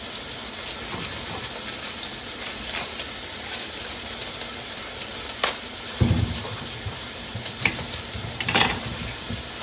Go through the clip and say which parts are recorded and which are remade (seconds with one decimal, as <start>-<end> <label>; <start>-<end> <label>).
0.0-0.4 remade; 0.4-3.7 recorded; 3.7-9.6 remade